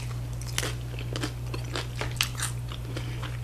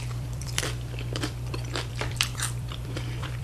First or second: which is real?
first